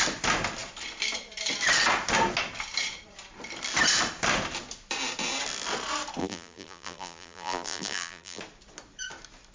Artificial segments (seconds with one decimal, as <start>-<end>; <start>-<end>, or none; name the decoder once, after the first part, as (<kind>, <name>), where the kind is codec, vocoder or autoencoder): 6.2-8.4 (vocoder, BigVGAN v2)